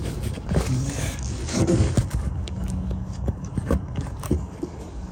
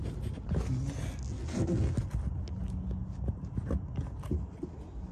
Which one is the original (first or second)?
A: second